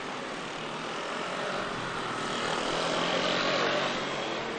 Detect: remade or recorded recorded